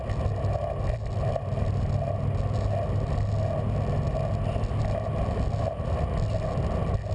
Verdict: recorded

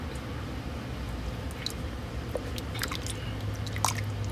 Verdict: recorded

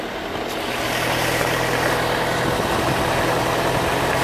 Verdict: recorded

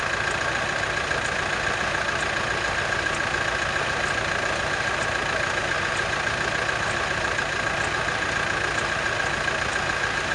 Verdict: recorded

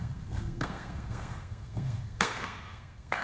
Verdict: remade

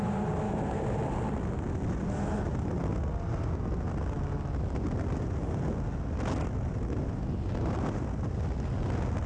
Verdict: recorded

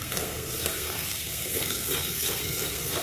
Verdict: remade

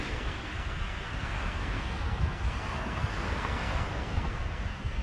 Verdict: remade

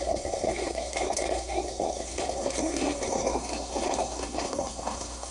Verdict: remade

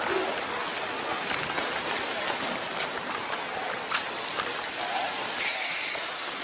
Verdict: recorded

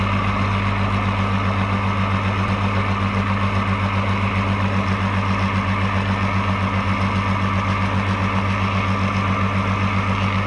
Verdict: recorded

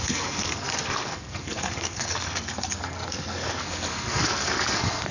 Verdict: remade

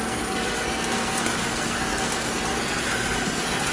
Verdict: remade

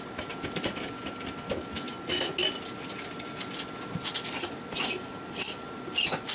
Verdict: recorded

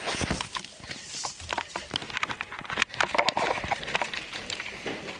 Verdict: recorded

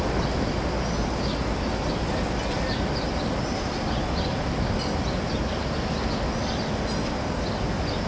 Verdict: recorded